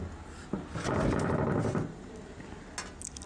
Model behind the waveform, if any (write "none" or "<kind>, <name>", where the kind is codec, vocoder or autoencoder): none